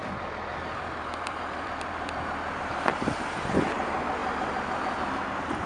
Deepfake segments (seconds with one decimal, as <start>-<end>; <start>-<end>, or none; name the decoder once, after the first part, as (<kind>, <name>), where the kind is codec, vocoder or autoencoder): 0.0-3.4 (vocoder, BigVGAN v2)